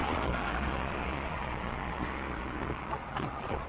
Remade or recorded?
remade